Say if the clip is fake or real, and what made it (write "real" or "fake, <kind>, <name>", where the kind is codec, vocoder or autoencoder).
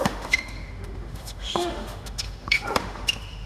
fake, autoencoder, DAC-VAE